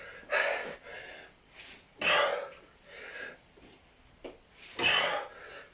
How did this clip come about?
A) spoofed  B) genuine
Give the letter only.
B